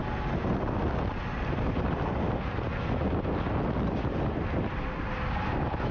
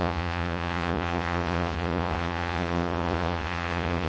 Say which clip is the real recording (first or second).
first